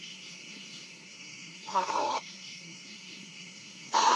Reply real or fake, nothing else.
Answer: fake